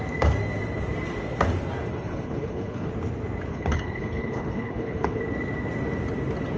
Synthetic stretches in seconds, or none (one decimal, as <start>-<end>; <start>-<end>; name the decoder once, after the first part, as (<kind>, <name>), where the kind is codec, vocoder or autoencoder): 1.9-2.9 (codec, HILCodec); 3.5-5.2